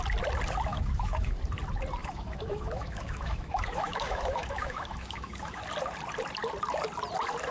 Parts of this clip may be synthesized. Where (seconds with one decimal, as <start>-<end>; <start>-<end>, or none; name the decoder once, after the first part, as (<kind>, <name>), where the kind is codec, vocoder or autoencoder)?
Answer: 0.7-1.3 (autoencoder, DAC-VAE); 2.0-5.6